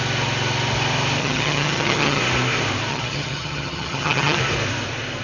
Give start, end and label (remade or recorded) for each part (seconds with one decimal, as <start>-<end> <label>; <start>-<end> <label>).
0.0-1.2 recorded; 1.2-2.2 remade; 2.2-2.9 recorded; 2.9-4.4 remade; 4.4-5.2 recorded